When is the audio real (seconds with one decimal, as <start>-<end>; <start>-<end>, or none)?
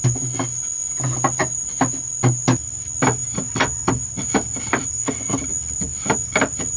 0.0-4.9; 5.4-6.8